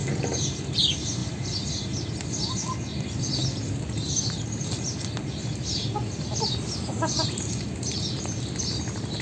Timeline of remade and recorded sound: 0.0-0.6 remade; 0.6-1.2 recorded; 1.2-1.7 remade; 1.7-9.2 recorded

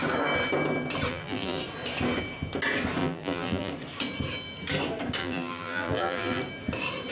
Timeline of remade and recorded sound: 0.0-1.1 recorded; 1.1-1.6 remade; 1.6-3.0 recorded; 3.0-3.7 remade; 3.7-5.2 recorded; 5.2-6.4 remade; 6.4-7.1 recorded

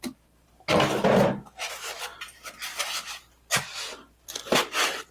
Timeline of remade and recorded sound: 0.0-5.1 recorded

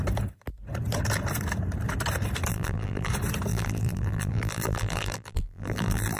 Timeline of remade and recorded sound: 0.0-2.5 recorded; 2.5-3.1 remade; 3.1-3.5 recorded; 3.5-6.2 remade